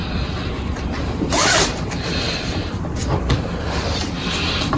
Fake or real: fake